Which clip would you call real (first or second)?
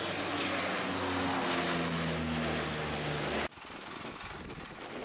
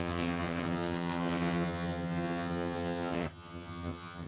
first